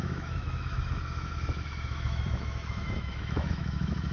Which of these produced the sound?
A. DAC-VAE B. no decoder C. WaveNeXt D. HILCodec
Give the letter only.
A